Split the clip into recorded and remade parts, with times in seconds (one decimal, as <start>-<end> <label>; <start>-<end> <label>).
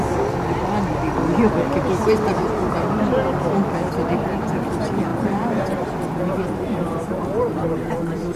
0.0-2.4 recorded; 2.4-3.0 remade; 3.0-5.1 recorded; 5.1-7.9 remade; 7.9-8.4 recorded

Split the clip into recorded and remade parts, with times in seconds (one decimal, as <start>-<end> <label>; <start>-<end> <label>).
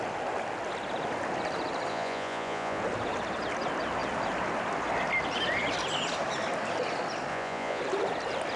0.0-1.9 recorded; 1.9-2.8 remade; 2.8-7.3 recorded; 7.3-7.8 remade; 7.8-8.6 recorded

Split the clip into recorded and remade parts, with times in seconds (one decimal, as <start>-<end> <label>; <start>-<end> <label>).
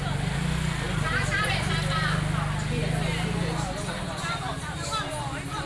0.0-1.1 recorded; 1.1-1.7 remade; 1.7-5.7 recorded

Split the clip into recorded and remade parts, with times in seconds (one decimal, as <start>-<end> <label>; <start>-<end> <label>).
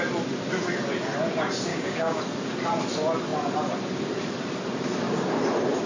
0.0-1.7 recorded; 1.7-2.2 remade; 2.2-5.9 recorded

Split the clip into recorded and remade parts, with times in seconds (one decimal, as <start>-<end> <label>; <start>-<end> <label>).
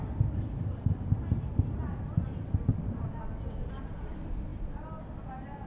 0.0-5.7 recorded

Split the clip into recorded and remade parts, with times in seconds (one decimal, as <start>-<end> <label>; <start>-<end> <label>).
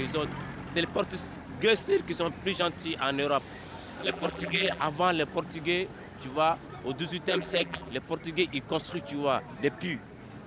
0.0-4.0 recorded; 4.0-4.8 remade; 4.8-7.3 recorded; 7.3-7.9 remade; 7.9-10.5 recorded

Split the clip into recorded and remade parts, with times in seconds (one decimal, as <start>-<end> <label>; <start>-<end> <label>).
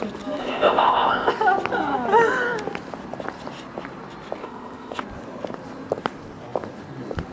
0.0-0.4 recorded; 0.4-1.3 remade; 1.3-4.4 recorded; 4.4-5.0 remade; 5.0-7.3 recorded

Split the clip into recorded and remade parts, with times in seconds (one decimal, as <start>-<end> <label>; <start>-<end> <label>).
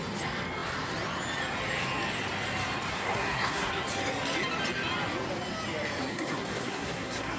0.0-2.9 recorded; 2.9-3.7 remade; 3.7-6.1 recorded; 6.1-7.4 remade